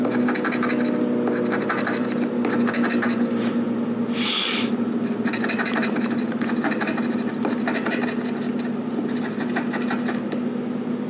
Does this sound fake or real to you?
real